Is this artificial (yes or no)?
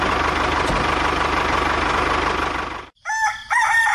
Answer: no